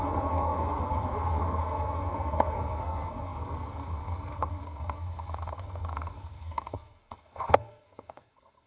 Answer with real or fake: fake